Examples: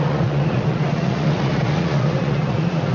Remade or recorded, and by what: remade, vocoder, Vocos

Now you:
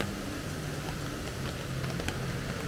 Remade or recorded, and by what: recorded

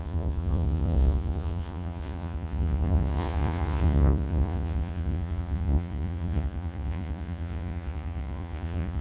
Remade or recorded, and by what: remade, vocoder, Vocos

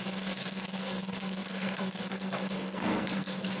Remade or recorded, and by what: remade, codec, SNAC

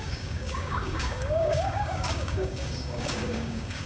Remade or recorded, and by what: remade, codec, DAC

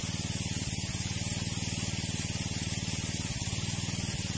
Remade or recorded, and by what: recorded